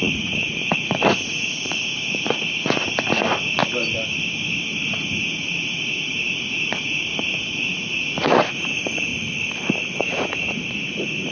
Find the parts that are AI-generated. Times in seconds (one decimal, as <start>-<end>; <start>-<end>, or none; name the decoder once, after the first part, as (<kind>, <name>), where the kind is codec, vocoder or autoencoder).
0.0-3.6 (vocoder, Vocos); 4.9-9.1; 9.9-11.3